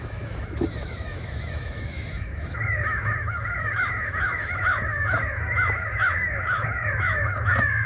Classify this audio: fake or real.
fake